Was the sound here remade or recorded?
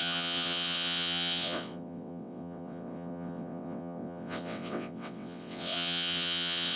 remade